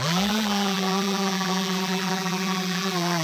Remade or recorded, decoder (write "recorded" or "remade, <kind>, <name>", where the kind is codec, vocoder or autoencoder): remade, vocoder, BigVGAN v2